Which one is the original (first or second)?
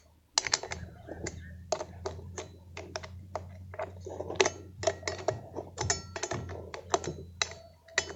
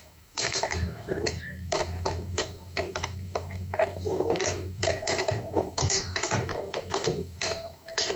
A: first